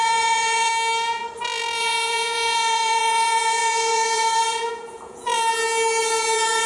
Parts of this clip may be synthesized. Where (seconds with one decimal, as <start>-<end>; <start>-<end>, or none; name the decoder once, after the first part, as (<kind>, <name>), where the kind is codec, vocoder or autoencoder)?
0.0-0.7 (vocoder, Vocos); 1.8-5.3; 6.0-6.7